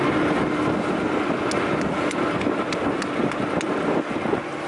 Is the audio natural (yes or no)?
yes